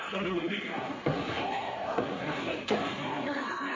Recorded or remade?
remade